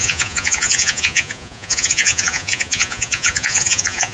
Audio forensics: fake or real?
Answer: fake